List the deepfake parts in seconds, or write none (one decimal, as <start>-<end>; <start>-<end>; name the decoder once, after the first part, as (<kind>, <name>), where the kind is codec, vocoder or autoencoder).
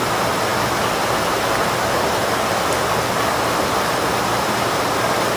none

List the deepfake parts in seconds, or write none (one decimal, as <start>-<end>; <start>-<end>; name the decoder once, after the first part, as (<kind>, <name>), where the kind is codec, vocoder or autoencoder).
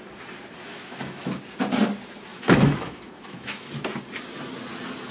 0.7-1.4 (autoencoder, DAC-VAE); 2.3-3.7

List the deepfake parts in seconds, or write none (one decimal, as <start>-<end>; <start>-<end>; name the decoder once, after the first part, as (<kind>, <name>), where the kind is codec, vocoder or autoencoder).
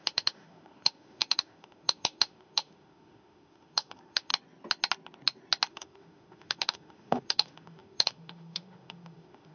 0.0-4.3 (autoencoder, DAC-VAE); 5.7-9.5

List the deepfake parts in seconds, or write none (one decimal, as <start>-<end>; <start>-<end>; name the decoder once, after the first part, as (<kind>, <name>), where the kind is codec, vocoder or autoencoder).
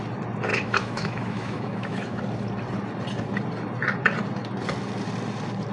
0.5-2.2 (autoencoder, DAC-VAE)